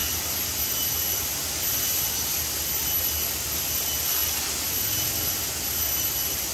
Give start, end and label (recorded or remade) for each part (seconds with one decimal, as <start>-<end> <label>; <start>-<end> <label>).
0.0-6.5 recorded